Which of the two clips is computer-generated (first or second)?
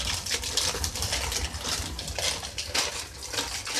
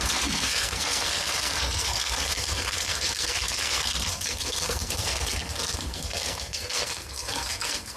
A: second